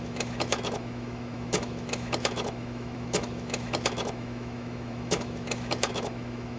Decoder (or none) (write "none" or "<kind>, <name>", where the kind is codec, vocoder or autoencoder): autoencoder, DAC-VAE